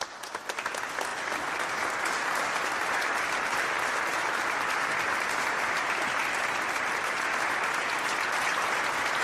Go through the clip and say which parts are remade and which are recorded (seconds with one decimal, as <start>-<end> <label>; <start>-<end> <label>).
0.0-1.1 recorded; 1.1-2.0 remade; 2.0-6.2 recorded; 6.2-8.5 remade; 8.5-9.2 recorded